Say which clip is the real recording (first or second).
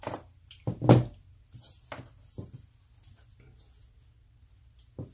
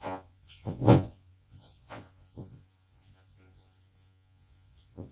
first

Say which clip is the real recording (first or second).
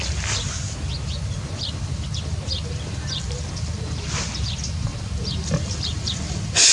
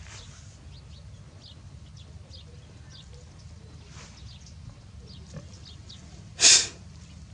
second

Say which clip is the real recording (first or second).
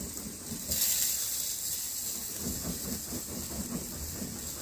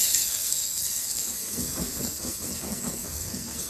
first